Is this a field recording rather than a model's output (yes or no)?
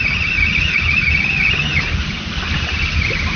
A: yes